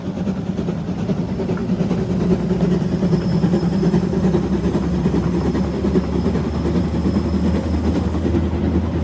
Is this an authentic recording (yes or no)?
yes